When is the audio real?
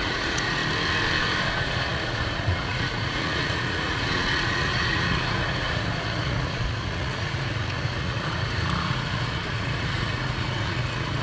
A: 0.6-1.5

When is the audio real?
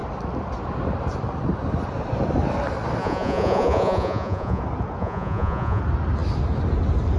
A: 0.0-3.0; 4.6-5.0; 5.8-7.2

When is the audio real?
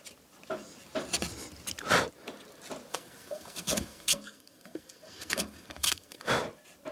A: 0.0-2.9; 6.3-6.9